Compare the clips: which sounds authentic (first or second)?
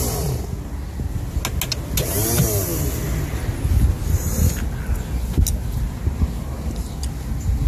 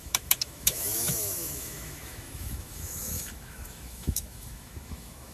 first